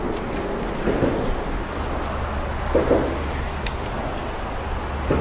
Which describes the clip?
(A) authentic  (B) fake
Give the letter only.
A